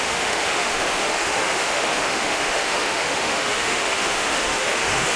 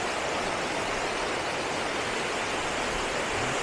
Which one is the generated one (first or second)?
first